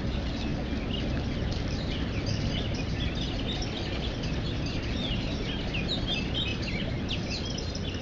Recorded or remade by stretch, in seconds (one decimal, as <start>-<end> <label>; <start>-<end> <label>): 0.0-8.0 recorded